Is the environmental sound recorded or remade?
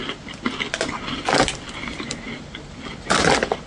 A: recorded